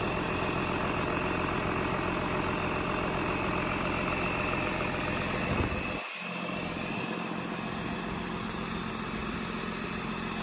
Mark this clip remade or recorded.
recorded